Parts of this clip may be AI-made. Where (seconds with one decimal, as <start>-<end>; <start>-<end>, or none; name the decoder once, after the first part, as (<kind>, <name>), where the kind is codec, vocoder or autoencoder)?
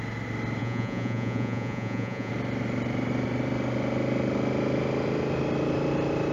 0.6-2.3 (vocoder, Vocos)